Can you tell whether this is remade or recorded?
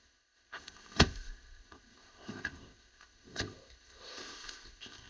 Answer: remade